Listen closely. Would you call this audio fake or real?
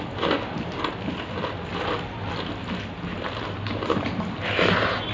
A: real